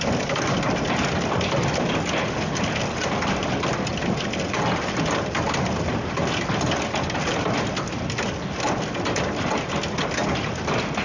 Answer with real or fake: real